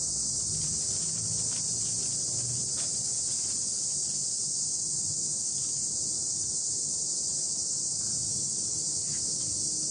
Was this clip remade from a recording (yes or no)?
no